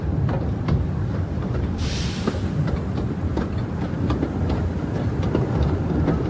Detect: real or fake fake